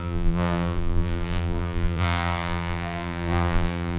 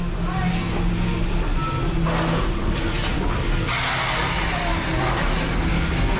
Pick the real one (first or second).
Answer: second